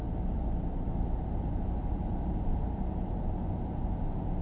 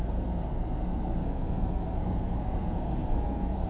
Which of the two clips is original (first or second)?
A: first